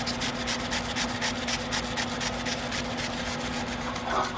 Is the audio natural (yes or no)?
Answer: yes